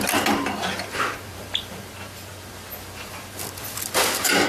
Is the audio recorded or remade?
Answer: remade